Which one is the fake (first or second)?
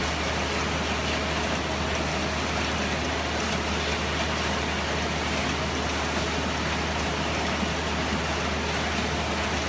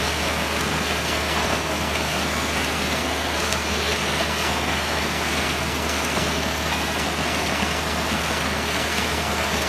second